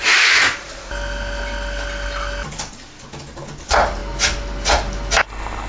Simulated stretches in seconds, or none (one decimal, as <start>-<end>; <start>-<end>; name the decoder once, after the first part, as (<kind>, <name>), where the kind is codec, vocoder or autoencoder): none